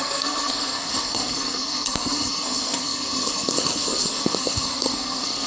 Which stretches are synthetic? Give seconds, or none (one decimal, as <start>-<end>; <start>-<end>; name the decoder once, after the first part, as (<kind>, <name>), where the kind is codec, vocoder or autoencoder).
0.0-5.5 (codec, SNAC)